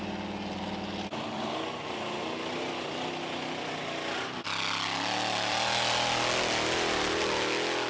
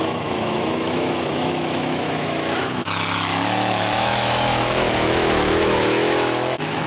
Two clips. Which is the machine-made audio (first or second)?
second